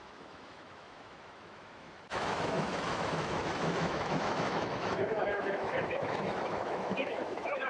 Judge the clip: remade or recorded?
remade